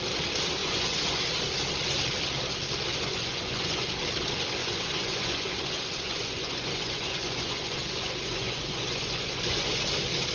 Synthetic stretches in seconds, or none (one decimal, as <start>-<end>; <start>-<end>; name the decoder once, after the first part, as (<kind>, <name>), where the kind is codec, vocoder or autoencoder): 0.6-1.2 (vocoder, Vocos); 2.9-3.9; 4.6-9.8